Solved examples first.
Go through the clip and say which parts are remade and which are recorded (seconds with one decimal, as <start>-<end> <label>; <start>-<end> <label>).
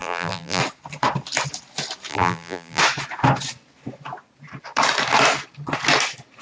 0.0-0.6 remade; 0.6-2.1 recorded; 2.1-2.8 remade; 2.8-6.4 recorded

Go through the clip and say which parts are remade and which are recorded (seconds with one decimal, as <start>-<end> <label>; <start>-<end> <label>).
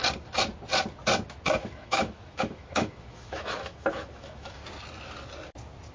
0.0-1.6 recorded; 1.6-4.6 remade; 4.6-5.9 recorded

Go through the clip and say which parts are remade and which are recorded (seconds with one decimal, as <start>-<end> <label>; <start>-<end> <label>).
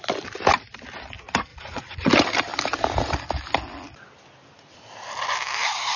0.0-1.5 recorded; 1.5-2.1 remade; 2.1-6.0 recorded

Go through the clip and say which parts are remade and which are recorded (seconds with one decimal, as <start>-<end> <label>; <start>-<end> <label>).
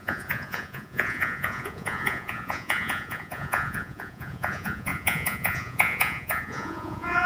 0.0-7.3 remade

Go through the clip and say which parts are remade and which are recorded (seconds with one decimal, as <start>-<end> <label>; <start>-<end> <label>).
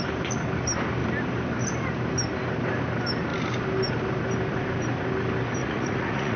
0.0-5.6 recorded; 5.6-6.4 remade